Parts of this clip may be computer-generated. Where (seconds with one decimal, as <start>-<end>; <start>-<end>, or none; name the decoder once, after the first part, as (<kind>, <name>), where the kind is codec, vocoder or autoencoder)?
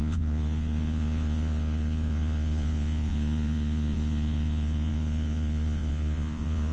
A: 0.0-6.7 (vocoder, Vocos)